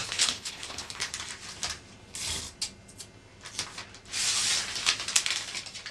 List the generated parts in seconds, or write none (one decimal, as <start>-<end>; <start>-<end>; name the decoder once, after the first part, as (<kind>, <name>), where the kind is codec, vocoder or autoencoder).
0.0-1.1 (codec, HILCodec)